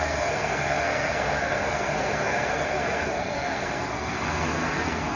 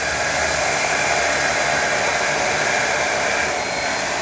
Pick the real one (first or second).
second